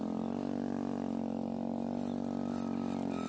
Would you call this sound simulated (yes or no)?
no